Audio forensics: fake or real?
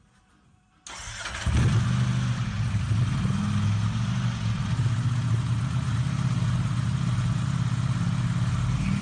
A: real